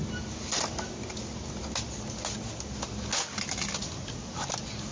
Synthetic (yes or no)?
no